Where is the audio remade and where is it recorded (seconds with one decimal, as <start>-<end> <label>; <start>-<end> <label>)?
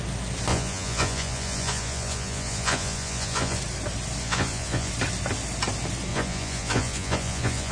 0.0-0.5 recorded; 0.5-3.6 remade; 3.6-4.2 recorded; 4.2-4.9 remade; 4.9-6.1 recorded; 6.1-7.7 remade